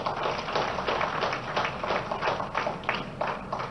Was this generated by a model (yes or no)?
no